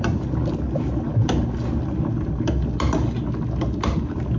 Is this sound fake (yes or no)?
no